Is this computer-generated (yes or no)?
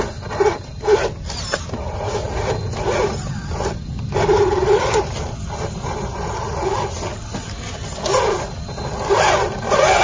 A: no